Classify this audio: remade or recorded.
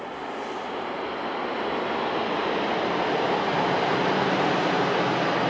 recorded